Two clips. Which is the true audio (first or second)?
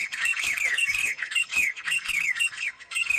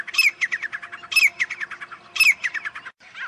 second